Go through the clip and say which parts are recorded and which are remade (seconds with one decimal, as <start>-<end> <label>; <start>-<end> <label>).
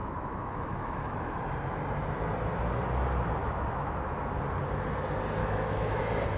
0.0-1.4 remade; 1.4-3.4 recorded; 3.4-4.4 remade; 4.4-5.4 recorded; 5.4-6.0 remade; 6.0-6.4 recorded